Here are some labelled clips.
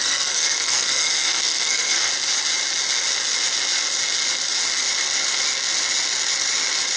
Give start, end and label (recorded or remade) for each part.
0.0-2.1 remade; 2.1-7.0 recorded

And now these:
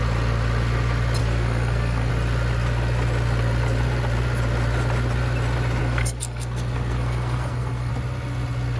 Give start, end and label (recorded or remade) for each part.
0.0-1.2 recorded; 1.2-2.1 remade; 2.1-5.8 recorded; 5.8-7.9 remade; 7.9-8.8 recorded